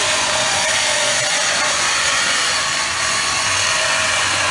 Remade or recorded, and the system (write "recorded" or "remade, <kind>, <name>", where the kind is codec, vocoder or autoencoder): remade, vocoder, Vocos